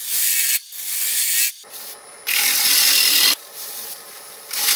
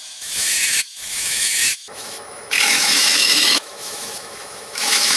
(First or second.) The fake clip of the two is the second